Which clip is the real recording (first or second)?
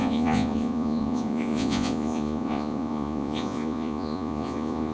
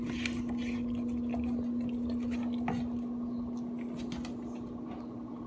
second